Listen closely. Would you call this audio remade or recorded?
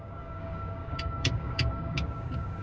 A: remade